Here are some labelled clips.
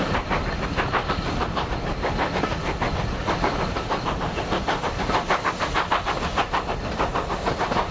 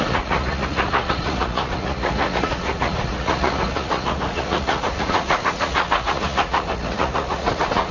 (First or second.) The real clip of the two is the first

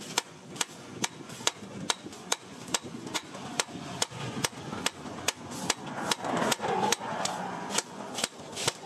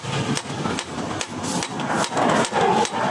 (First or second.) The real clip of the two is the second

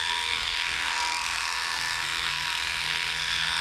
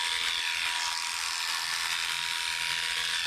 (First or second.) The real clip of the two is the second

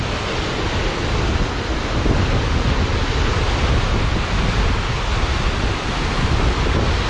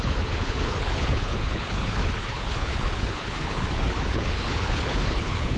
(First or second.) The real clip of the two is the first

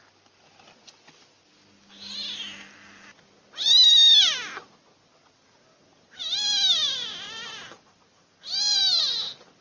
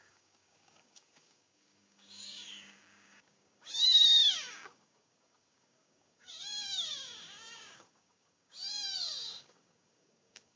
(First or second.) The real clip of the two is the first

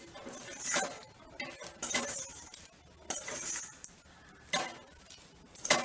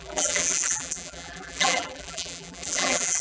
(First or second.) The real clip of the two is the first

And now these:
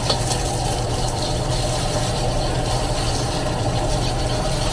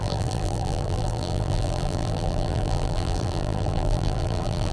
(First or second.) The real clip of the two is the first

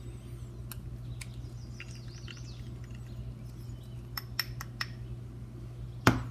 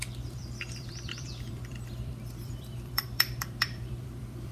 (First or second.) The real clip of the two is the first